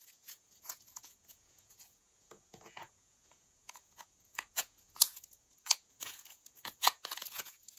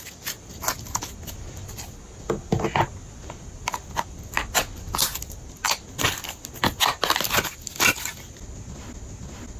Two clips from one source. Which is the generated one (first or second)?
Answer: first